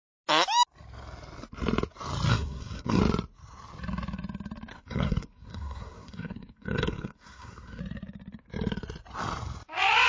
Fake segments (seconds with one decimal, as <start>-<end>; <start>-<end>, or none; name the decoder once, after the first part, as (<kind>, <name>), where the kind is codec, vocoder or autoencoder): 2.3-3.0 (codec, SNAC); 4.7-7.8